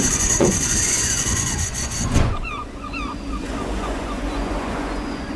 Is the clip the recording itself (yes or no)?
no